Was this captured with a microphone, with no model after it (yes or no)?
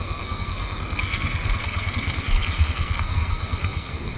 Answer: no